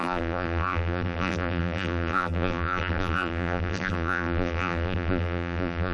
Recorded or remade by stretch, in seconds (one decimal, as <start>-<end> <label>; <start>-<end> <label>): 0.0-5.9 remade